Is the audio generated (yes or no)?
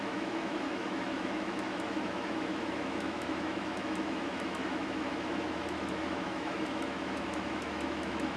yes